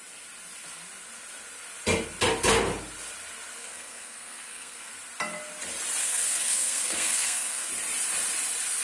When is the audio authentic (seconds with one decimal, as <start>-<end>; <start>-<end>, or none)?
0.0-3.6; 4.9-6.0; 7.7-8.8